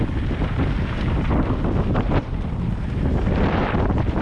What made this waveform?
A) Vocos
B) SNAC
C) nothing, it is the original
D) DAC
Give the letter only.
C